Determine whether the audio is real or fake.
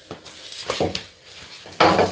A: real